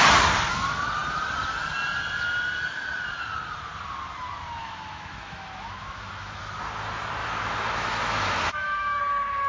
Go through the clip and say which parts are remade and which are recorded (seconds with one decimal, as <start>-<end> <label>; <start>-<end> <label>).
0.0-4.6 recorded; 4.6-6.4 remade; 6.4-7.2 recorded; 7.2-9.0 remade; 9.0-9.5 recorded